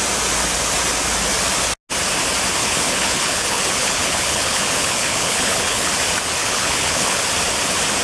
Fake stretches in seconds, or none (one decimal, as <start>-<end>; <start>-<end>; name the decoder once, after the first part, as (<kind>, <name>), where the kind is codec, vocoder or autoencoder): 2.6-5.9 (codec, HILCodec); 6.4-7.2